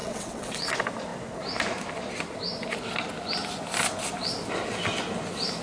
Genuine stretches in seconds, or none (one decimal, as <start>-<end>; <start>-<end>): 0.7-5.6